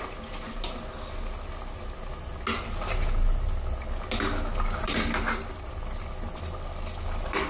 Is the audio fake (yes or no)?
no